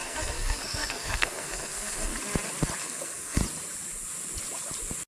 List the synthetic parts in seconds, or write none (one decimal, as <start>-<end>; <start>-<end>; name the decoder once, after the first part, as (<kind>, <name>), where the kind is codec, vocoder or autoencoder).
0.0-2.1 (codec, SNAC); 2.8-3.4